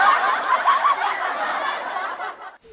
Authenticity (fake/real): real